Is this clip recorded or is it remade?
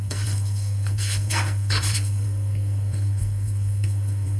remade